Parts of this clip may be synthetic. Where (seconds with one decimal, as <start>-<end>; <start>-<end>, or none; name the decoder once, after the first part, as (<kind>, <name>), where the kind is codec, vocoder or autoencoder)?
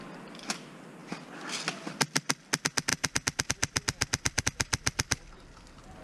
none